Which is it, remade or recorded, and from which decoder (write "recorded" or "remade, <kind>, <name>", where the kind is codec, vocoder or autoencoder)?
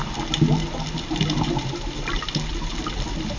recorded